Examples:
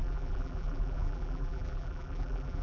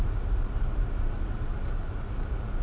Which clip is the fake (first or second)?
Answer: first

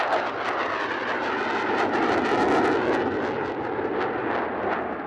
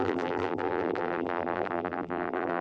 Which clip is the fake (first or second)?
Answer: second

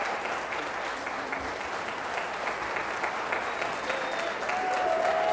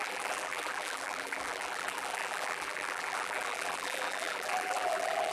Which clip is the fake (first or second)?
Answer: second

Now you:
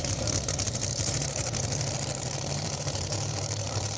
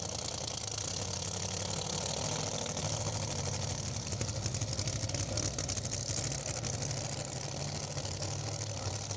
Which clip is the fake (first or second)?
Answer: first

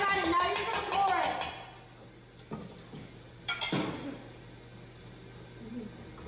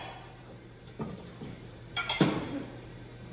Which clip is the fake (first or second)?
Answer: second